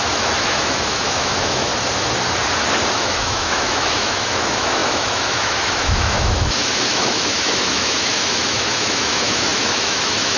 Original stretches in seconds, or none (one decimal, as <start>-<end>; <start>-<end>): 1.7-2.9